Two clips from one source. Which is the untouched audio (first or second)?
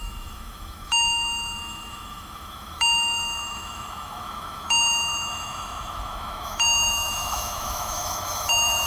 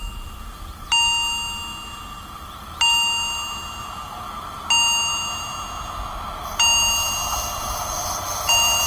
second